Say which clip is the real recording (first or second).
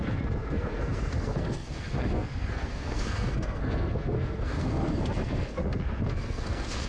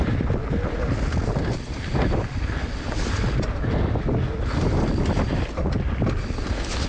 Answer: second